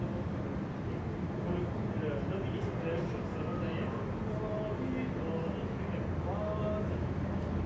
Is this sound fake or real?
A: real